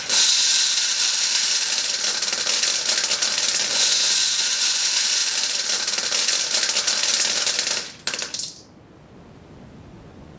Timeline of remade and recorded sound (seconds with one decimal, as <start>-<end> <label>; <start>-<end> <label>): 0.0-0.5 remade; 0.5-3.7 recorded; 3.7-5.2 remade; 5.2-9.9 recorded; 9.9-10.4 remade